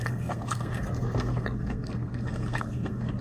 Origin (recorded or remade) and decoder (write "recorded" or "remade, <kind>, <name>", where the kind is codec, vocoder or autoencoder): remade, codec, SNAC